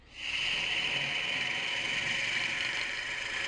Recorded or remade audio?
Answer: recorded